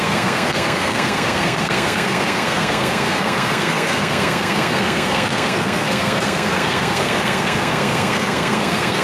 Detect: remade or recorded remade